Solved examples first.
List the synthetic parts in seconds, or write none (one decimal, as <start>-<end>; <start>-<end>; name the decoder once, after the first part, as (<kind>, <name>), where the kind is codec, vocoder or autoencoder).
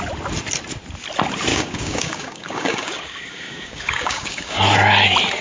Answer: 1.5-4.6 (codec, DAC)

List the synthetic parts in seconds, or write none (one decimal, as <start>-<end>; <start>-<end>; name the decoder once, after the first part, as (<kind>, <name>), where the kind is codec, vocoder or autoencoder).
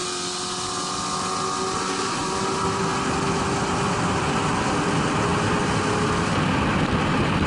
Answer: none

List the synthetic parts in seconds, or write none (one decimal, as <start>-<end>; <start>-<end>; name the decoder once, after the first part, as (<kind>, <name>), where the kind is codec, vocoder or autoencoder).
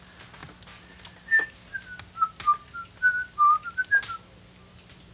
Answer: none